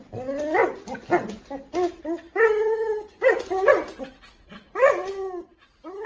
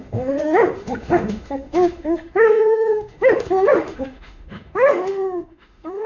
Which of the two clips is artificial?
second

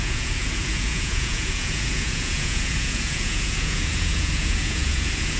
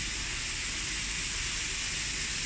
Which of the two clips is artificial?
first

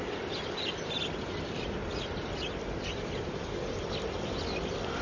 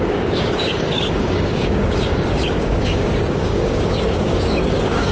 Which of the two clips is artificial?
second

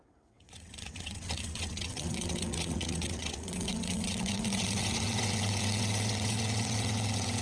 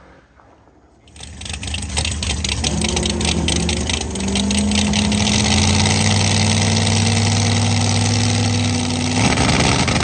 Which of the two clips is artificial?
first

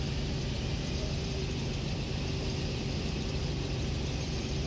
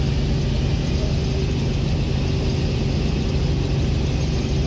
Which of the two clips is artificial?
first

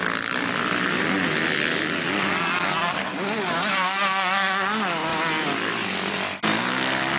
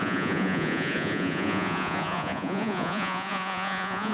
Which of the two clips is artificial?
second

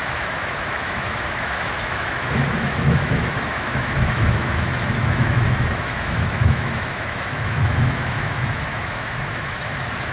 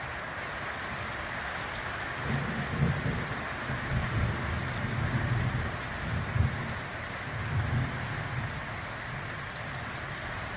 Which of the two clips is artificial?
first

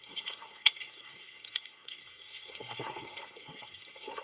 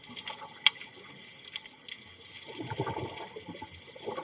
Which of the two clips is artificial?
first